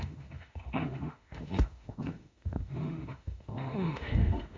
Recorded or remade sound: remade